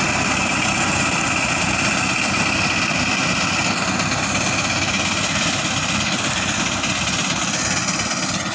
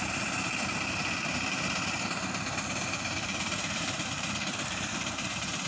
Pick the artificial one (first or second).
second